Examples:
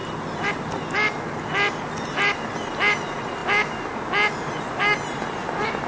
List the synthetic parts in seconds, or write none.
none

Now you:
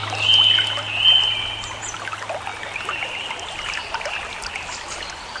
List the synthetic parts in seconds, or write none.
none

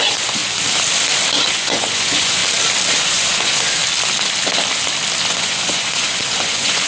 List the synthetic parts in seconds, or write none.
0.0-0.4 (vocoder, Vocos); 1.5-2.4; 3.0-3.8; 5.3-6.9

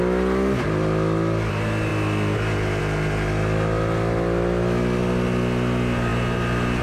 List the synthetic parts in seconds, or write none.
none